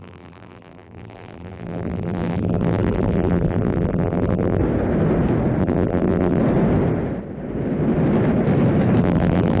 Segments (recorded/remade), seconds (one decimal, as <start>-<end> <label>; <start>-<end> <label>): 0.0-4.6 remade; 4.6-5.6 recorded; 5.6-6.4 remade; 6.4-9.0 recorded; 9.0-9.6 remade